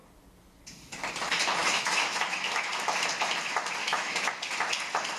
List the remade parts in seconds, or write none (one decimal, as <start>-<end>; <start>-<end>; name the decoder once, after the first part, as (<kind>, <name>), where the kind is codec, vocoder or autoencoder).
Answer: 1.6-2.7 (autoencoder, DAC-VAE); 3.8-4.3